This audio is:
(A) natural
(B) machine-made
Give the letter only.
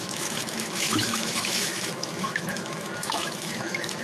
B